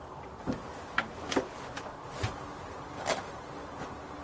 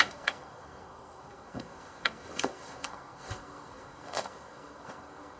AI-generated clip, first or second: second